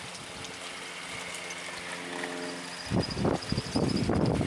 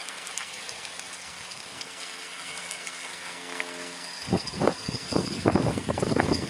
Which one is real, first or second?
first